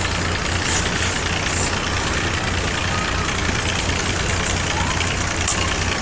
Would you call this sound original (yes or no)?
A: yes